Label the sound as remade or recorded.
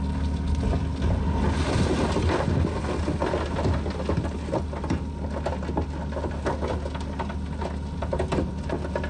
recorded